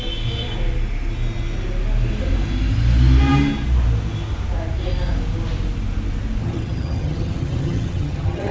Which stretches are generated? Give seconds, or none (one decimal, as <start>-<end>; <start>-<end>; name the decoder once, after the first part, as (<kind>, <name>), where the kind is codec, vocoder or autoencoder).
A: 6.4-8.5 (vocoder, HiFi-GAN)